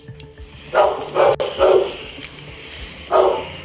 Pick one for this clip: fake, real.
real